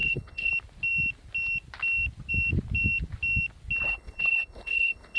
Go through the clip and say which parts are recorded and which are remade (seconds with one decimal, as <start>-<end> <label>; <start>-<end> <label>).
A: 0.0-0.5 remade; 0.5-3.8 recorded; 3.8-5.2 remade